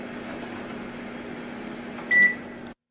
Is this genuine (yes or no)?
yes